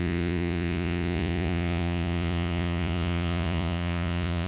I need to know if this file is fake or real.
fake